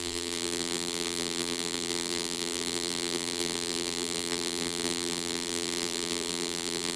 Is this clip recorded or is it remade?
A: remade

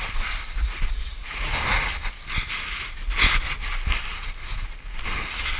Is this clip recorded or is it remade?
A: recorded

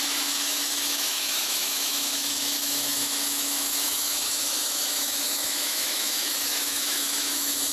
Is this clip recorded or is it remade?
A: remade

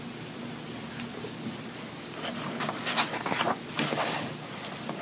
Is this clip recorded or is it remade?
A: recorded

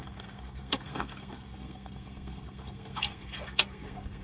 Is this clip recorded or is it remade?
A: remade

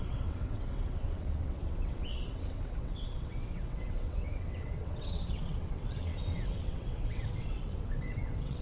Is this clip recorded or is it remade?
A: remade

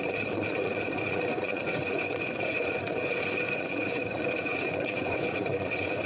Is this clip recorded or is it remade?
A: remade